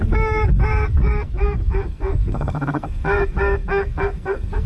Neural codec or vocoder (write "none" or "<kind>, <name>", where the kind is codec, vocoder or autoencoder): codec, SNAC